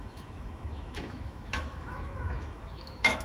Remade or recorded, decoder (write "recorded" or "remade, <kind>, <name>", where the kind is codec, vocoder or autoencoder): remade, autoencoder, DAC-VAE